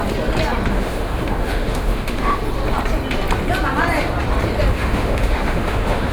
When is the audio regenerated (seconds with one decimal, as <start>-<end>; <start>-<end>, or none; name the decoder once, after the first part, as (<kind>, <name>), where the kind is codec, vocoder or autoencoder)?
0.7-2.4 (autoencoder, DAC-VAE); 4.7-6.1

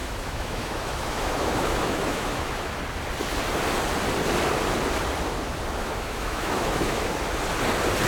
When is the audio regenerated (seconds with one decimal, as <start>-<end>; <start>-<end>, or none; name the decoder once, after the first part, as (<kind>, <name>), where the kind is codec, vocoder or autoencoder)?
0.0-2.8 (autoencoder, DAC-VAE); 5.8-7.0